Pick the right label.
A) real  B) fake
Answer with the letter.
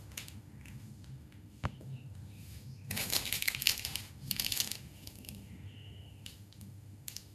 B